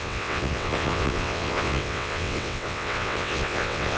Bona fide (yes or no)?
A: no